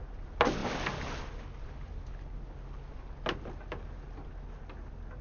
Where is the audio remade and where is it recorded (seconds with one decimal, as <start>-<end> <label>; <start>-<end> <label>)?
0.0-5.2 recorded